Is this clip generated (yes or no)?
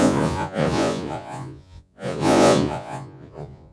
yes